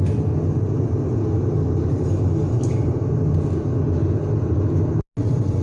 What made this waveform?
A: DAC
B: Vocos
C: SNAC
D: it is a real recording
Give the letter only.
D